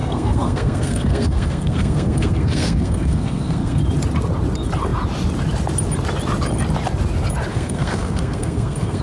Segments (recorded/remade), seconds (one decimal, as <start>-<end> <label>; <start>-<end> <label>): 0.0-3.8 remade; 3.8-7.5 recorded; 7.5-9.0 remade